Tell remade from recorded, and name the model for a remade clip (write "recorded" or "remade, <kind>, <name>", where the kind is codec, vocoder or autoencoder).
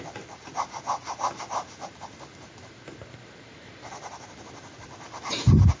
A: recorded